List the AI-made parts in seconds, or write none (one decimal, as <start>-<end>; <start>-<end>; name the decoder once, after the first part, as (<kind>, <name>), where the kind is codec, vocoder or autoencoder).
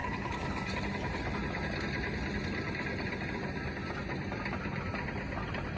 none